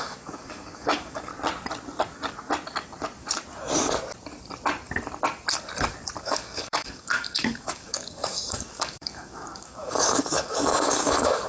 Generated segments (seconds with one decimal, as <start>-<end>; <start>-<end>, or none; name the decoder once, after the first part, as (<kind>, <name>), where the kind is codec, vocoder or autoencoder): 0.0-1.3 (codec, DAC); 6.2-11.5